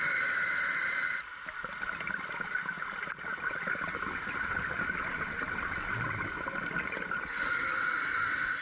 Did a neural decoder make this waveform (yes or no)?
no